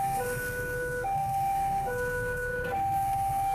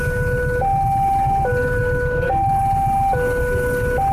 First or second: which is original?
second